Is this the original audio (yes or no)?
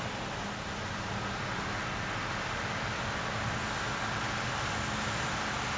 yes